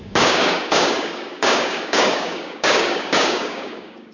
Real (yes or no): no